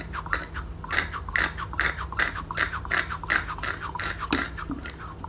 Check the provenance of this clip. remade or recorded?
recorded